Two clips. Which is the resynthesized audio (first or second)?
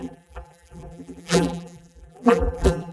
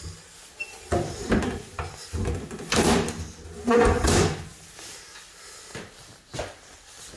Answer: first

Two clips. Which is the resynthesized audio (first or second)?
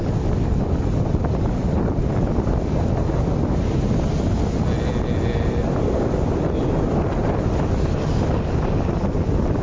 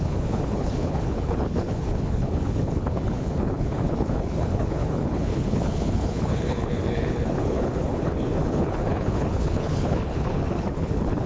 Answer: second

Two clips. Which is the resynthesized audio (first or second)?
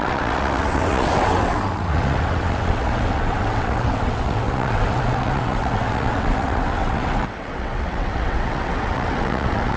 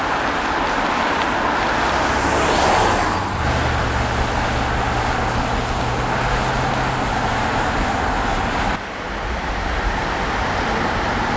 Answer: first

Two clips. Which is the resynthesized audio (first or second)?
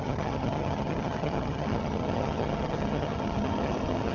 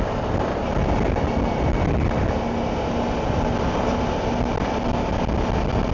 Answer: first